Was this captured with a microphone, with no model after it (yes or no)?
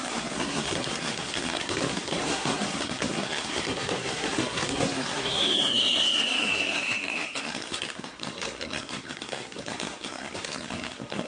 no